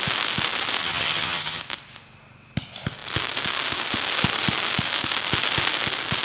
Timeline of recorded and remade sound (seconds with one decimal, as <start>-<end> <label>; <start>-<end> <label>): 0.0-0.8 recorded; 0.8-1.6 remade; 1.6-6.2 recorded